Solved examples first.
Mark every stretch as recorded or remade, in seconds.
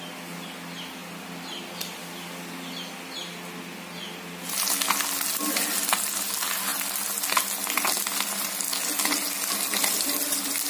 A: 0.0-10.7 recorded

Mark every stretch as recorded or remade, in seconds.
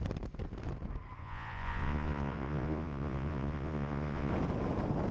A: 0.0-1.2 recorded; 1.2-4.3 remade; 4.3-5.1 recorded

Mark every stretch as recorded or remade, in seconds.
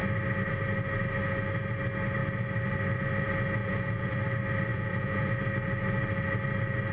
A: 0.0-3.6 recorded; 3.6-4.2 remade; 4.2-4.7 recorded; 4.7-5.3 remade; 5.3-6.9 recorded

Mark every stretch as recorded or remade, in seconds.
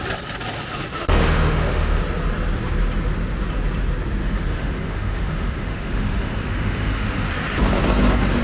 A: 0.0-0.9 recorded; 0.9-2.0 remade; 2.0-4.2 recorded; 4.2-7.3 remade; 7.3-8.4 recorded